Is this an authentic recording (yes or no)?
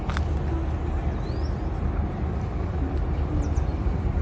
yes